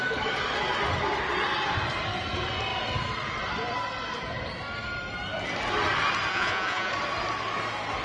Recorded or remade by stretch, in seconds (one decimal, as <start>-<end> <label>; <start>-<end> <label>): 0.0-6.3 recorded; 6.3-6.9 remade; 6.9-8.0 recorded